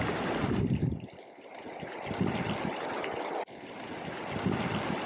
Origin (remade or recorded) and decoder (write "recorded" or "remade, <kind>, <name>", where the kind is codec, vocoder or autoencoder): recorded